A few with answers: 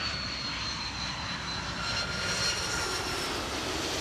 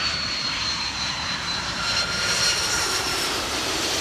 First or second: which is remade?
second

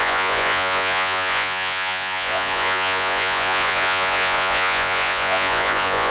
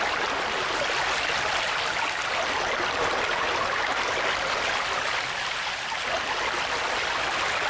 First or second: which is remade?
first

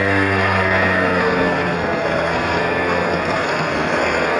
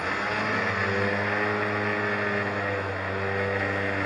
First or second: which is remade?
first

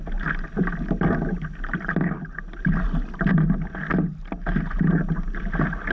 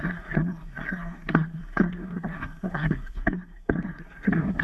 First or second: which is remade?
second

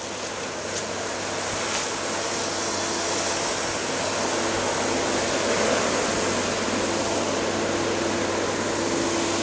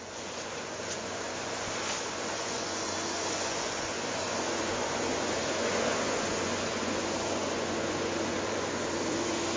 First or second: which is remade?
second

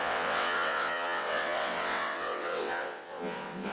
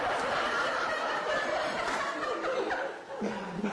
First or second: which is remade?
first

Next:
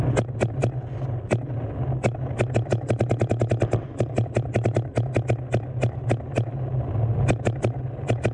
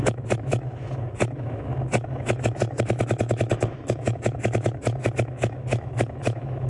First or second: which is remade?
second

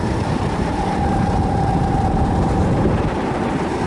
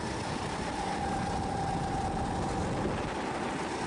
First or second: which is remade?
first